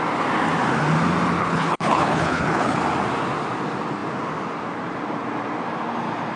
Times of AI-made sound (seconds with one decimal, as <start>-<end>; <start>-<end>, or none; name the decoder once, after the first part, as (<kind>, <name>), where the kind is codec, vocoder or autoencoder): 1.4-2.8 (codec, HILCodec)